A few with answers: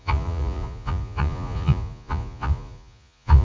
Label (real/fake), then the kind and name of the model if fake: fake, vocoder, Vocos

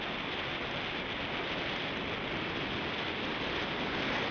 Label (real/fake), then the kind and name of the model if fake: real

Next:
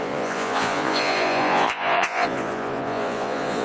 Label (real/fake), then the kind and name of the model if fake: fake, vocoder, Vocos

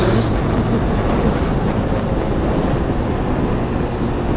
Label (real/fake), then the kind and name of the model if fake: real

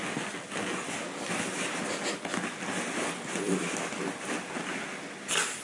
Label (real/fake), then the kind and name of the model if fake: real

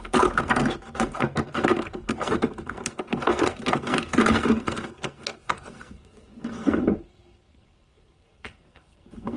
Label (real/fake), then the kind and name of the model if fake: fake, codec, SNAC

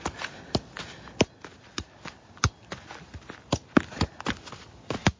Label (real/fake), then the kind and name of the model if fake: real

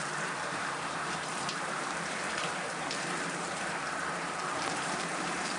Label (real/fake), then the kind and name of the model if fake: fake, vocoder, BigVGAN v2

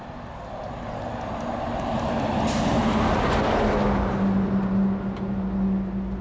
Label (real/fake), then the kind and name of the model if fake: real